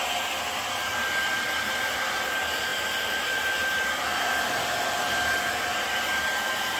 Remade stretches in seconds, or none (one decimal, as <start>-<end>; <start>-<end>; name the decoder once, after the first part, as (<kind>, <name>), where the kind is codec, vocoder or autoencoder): none